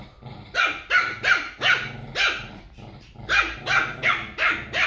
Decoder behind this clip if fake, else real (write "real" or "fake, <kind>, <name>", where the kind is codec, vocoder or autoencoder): real